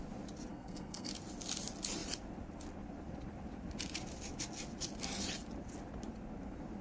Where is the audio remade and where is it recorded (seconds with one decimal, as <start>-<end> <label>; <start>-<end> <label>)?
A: 0.0-0.5 recorded; 0.5-1.1 remade; 1.1-6.8 recorded